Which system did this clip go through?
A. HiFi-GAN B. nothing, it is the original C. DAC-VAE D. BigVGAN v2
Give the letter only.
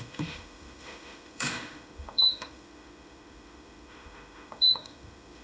C